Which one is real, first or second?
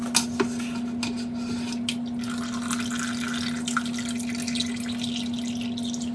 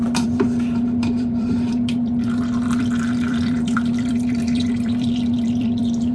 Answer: first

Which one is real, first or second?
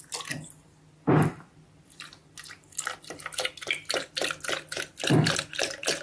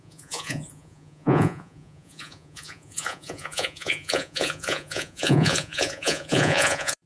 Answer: first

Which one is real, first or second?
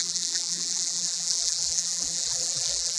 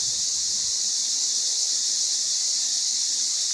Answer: second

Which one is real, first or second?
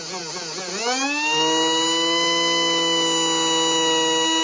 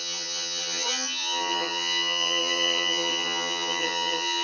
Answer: first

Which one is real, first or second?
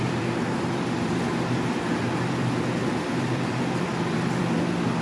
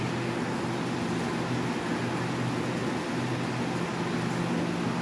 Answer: second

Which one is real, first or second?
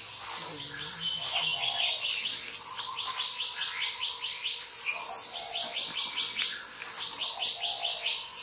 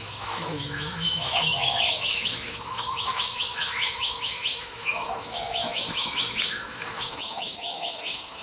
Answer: first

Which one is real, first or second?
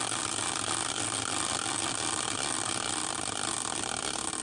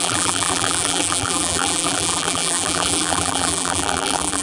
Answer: first